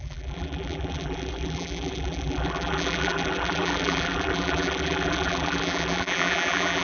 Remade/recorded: remade